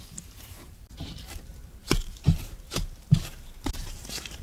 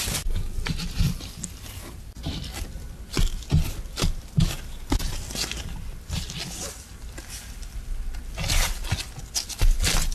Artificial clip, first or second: first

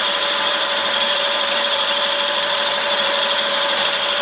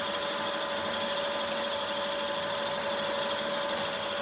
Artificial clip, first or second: first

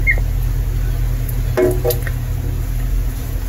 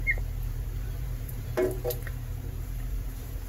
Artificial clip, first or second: second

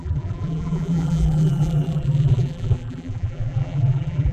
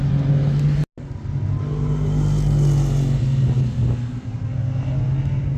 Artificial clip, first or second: first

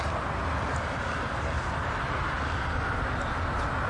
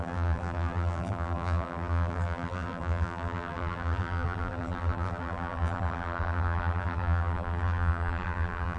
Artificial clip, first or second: second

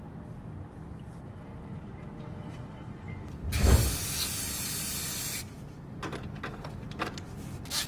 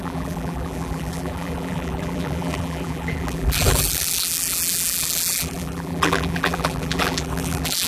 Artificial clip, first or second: second